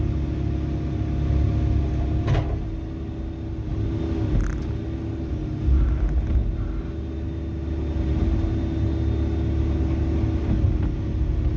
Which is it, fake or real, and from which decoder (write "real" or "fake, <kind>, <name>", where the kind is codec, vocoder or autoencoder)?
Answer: real